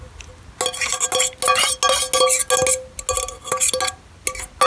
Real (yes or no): yes